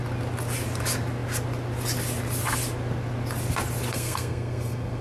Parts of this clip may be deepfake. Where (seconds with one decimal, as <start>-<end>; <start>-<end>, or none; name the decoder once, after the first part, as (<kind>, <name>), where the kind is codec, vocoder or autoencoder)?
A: 3.9-5.0 (codec, SNAC)